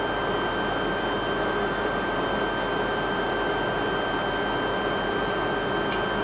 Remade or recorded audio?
recorded